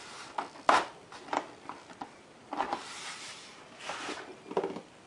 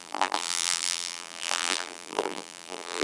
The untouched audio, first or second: first